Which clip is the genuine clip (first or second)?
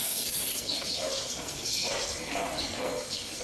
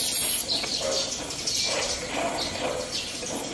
second